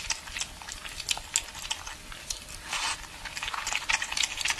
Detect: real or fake real